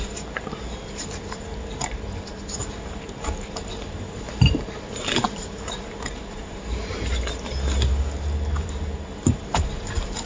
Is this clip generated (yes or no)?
yes